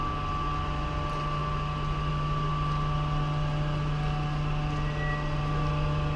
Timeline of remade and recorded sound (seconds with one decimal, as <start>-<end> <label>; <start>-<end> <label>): 0.0-6.2 recorded